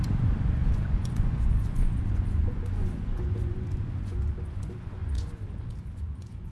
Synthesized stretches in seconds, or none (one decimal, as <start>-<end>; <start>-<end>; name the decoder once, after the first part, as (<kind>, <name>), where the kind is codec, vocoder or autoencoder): 0.0-6.5 (vocoder, Vocos)